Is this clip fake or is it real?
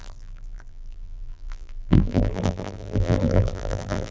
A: fake